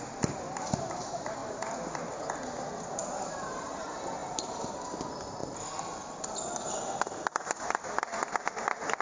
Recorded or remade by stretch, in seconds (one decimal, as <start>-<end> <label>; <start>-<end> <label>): 0.0-1.4 recorded; 1.4-1.9 remade; 1.9-3.0 recorded; 3.0-3.8 remade; 3.8-4.2 recorded; 4.2-4.7 remade; 4.7-9.0 recorded

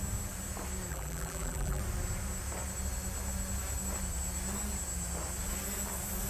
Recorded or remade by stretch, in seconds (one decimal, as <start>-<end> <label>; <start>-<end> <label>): 0.0-0.9 recorded; 0.9-1.8 remade; 1.8-6.3 recorded

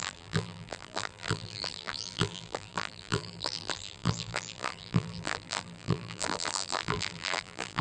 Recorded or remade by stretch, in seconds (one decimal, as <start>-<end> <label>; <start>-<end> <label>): 0.0-7.8 remade